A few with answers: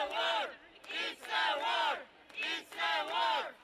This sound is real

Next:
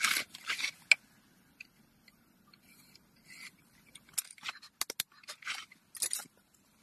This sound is real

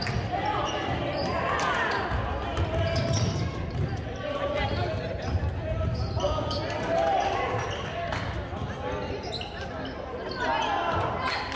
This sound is real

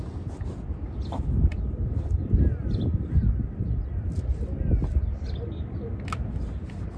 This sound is real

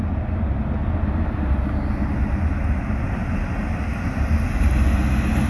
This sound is real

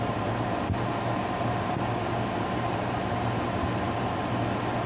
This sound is real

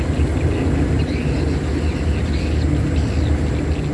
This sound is real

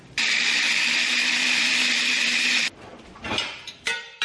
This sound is fake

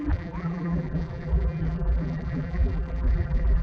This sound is fake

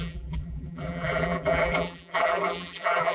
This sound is fake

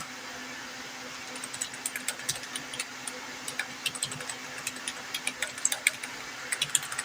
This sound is real